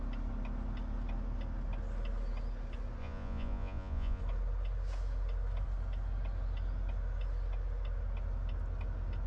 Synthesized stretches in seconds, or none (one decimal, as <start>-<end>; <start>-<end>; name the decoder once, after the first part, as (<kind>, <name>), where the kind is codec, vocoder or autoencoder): 3.0-4.2 (vocoder, Vocos)